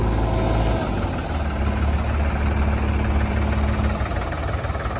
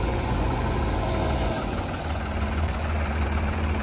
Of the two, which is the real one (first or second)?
first